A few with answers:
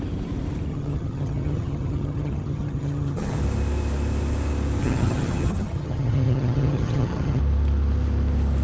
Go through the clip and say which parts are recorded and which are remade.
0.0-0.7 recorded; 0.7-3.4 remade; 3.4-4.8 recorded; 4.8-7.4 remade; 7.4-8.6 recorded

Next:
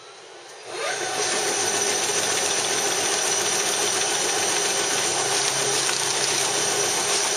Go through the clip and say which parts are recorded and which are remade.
0.0-7.4 recorded